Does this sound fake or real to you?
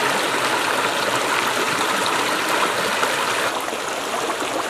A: real